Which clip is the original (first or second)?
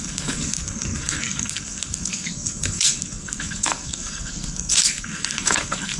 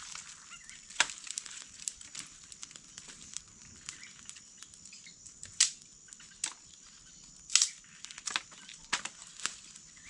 second